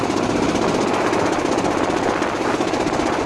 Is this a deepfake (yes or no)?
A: no